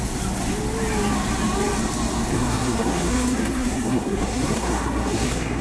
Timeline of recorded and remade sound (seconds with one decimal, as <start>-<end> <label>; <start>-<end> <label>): 0.0-2.3 recorded; 2.3-5.6 remade